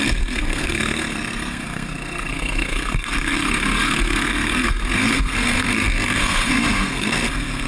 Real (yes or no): no